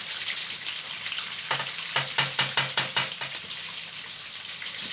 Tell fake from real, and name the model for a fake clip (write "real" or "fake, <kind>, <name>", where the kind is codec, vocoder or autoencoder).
real